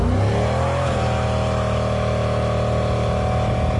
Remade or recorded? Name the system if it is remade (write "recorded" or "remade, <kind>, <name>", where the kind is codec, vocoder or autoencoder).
recorded